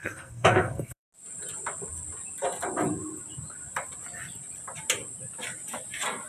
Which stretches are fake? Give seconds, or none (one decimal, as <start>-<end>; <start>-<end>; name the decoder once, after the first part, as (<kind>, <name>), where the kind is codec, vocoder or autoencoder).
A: 0.0-1.1 (codec, SNAC)